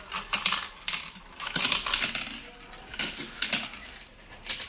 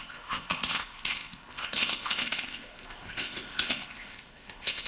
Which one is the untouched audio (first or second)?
first